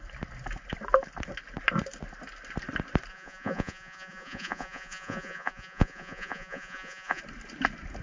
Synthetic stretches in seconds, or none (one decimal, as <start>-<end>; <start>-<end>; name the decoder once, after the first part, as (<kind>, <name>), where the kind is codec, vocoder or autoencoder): 3.1-7.2 (vocoder, Vocos)